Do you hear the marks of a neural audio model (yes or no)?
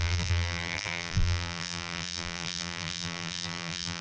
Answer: yes